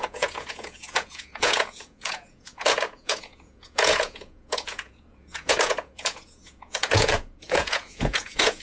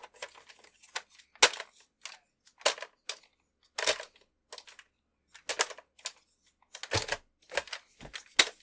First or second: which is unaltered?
second